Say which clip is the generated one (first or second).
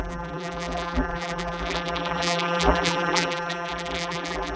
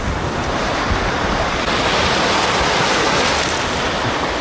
first